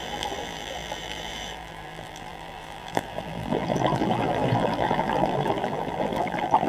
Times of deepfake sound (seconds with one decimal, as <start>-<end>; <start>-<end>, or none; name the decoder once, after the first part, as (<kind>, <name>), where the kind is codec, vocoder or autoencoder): 0.0-6.7 (vocoder, BigVGAN v2)